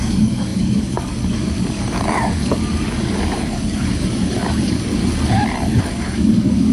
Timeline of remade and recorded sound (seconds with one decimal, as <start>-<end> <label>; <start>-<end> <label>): 0.0-5.0 remade; 5.0-5.8 recorded; 5.8-6.7 remade